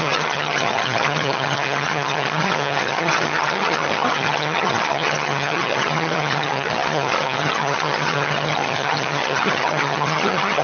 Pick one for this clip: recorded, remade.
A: remade